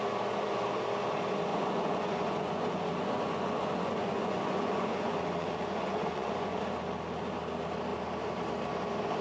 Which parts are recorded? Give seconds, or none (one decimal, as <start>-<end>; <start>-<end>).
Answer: 0.0-1.5; 6.6-9.2